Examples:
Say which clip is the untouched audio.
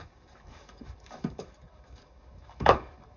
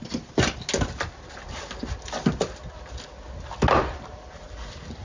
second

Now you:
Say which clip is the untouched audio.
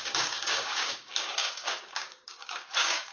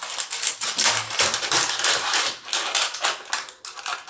second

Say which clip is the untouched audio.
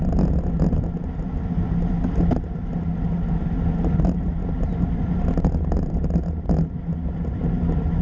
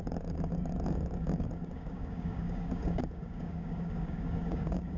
first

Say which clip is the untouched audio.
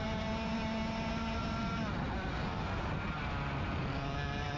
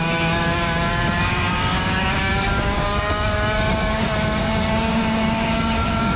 first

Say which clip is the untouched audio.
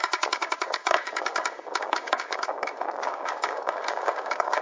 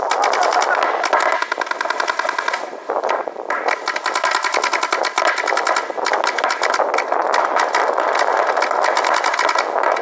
second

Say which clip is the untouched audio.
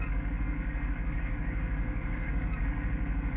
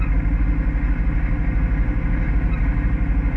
second